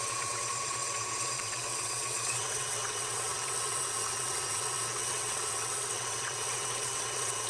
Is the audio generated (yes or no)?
yes